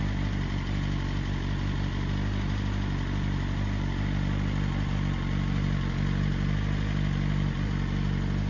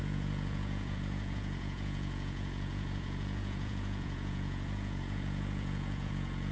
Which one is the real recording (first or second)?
first